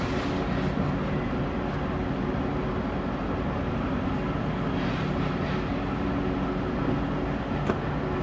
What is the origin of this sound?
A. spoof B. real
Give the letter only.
B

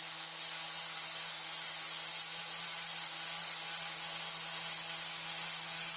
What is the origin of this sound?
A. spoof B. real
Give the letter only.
B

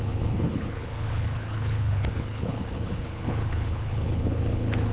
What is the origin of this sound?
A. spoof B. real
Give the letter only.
A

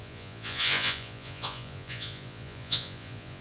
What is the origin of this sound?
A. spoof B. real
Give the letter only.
A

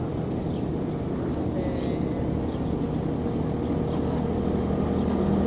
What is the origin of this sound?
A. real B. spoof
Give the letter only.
A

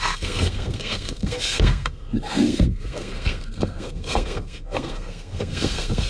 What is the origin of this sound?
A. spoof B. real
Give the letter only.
A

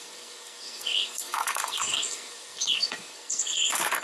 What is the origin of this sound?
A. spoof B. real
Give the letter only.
A